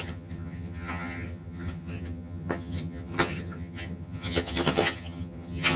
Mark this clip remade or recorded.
remade